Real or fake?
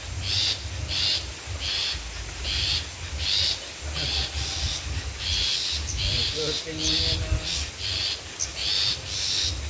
real